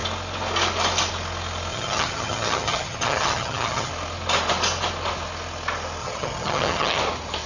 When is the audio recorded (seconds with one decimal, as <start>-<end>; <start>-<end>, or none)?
0.0-1.7; 3.9-6.0; 7.0-7.5